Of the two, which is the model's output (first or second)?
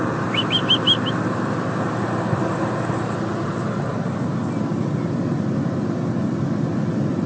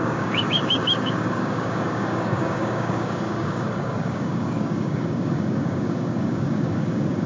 second